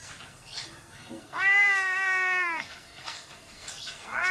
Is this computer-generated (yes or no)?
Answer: yes